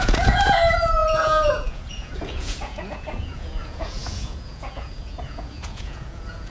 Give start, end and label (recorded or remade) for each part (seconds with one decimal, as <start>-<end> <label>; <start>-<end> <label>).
0.0-6.5 remade